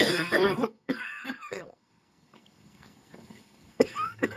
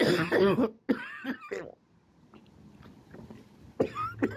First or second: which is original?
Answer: second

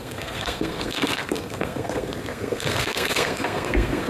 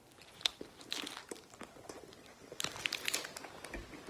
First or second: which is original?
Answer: second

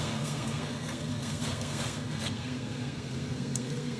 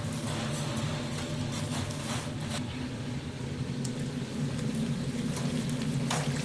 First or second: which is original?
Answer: second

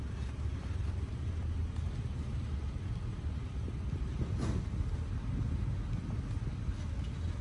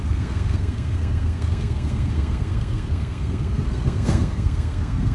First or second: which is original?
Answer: first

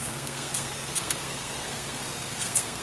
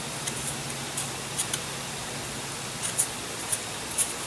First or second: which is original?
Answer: second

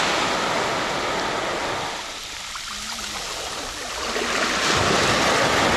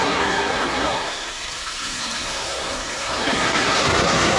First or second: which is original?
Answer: first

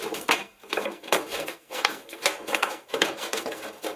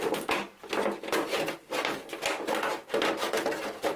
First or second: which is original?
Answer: second